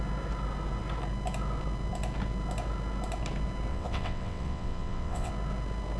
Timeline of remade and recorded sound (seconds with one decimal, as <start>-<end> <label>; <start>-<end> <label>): 0.0-3.7 recorded; 3.7-5.3 remade; 5.3-6.0 recorded